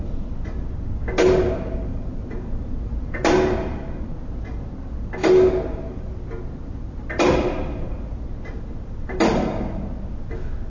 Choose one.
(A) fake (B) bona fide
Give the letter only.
B